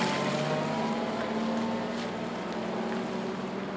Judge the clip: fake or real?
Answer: real